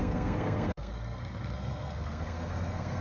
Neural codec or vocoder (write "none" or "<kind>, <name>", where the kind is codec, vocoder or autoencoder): codec, SNAC